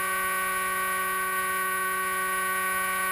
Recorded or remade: remade